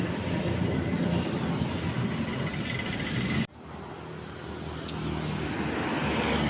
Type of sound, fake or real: real